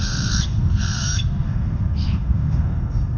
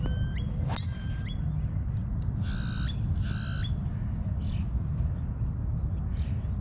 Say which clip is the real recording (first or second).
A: second